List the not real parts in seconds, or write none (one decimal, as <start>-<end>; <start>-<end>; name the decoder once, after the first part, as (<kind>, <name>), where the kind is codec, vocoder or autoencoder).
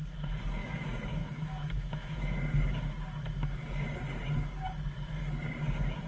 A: 0.6-2.2 (autoencoder, DAC-VAE)